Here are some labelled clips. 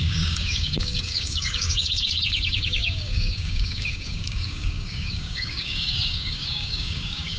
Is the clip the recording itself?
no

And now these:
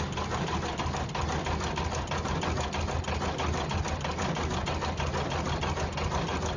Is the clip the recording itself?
yes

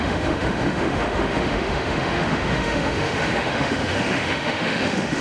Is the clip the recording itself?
no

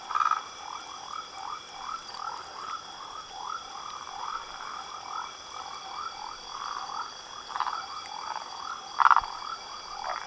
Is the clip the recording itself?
yes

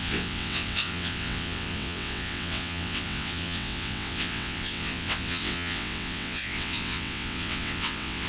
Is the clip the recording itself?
no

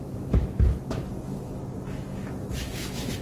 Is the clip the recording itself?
no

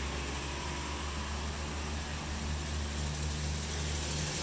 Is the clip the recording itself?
yes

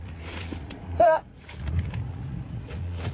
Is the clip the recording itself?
no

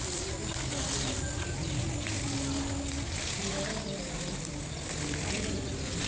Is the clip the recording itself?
yes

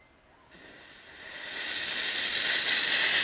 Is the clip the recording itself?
yes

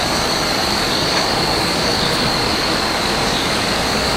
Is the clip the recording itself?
no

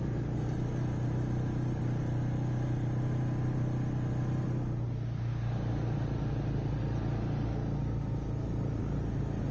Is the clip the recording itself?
yes